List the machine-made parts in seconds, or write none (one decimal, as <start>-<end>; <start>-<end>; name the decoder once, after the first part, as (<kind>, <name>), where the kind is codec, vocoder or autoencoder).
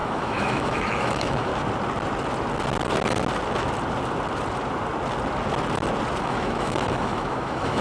0.0-1.5 (autoencoder, DAC-VAE); 6.2-7.8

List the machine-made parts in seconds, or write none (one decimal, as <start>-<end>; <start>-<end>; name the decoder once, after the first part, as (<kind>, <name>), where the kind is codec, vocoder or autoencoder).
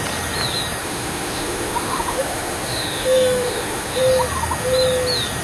0.8-4.0 (autoencoder, DAC-VAE)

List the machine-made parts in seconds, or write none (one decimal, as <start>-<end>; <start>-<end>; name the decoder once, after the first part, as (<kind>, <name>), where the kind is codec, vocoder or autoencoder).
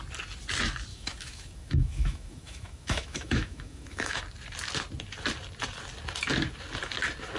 0.9-4.2 (autoencoder, DAC-VAE)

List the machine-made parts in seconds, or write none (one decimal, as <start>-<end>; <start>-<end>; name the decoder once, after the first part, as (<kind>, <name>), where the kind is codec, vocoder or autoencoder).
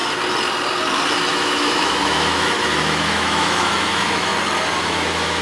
1.3-4.3 (autoencoder, DAC-VAE); 4.8-5.4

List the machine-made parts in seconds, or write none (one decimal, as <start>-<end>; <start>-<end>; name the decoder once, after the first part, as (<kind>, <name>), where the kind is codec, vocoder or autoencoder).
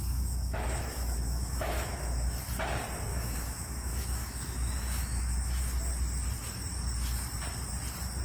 0.0-2.4 (autoencoder, DAC-VAE); 3.1-5.6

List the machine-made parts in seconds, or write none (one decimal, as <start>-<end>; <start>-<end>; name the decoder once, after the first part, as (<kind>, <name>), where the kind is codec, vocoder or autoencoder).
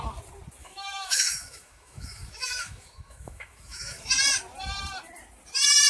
0.6-4.1 (autoencoder, DAC-VAE)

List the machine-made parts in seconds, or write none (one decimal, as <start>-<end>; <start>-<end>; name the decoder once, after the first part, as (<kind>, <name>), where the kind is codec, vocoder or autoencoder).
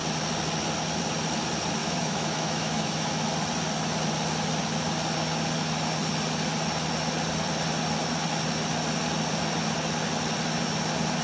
1.8-3.1 (autoencoder, DAC-VAE)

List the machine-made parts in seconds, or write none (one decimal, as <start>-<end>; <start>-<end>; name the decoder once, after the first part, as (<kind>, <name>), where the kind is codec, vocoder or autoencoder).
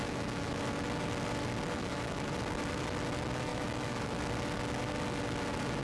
0.0-0.6 (autoencoder, DAC-VAE); 1.8-2.3; 3.5-4.2